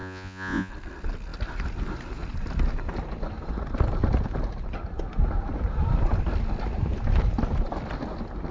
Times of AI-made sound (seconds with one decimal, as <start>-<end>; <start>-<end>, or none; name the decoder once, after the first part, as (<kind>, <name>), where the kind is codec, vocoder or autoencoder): 0.0-0.7 (vocoder, Vocos)

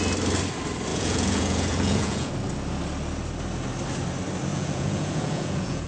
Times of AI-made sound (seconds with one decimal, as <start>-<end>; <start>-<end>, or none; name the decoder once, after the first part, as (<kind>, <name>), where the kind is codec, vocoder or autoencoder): 0.9-2.3 (vocoder, Vocos); 4.5-5.9